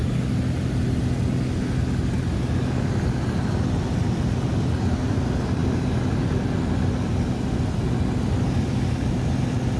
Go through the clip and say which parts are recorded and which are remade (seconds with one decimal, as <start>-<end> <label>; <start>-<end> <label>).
0.0-9.8 recorded